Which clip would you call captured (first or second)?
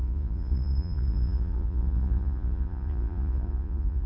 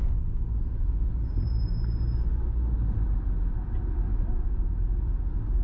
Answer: second